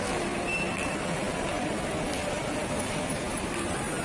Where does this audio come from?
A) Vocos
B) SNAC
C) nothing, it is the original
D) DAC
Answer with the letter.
C